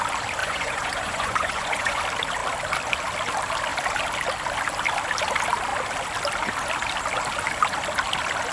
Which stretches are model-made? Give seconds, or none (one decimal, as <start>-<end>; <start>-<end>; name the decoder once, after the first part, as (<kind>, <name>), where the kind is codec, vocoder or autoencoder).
0.4-2.0 (vocoder, Vocos)